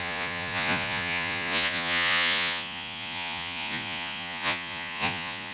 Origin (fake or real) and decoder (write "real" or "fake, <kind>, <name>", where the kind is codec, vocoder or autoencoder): fake, vocoder, Vocos